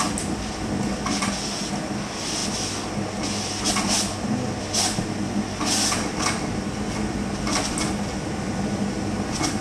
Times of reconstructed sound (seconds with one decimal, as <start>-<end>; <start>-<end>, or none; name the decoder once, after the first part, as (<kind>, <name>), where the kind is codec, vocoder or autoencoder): none